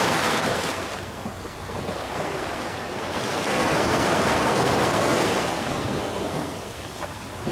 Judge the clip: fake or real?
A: fake